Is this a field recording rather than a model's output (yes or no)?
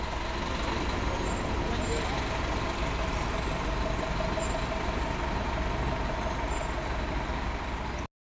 yes